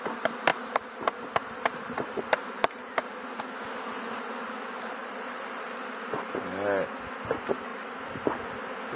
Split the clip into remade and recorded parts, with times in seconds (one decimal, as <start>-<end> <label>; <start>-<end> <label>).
0.0-0.5 recorded; 0.5-3.2 remade; 3.2-5.0 recorded; 5.0-5.7 remade; 5.7-9.0 recorded